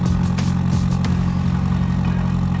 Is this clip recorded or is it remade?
recorded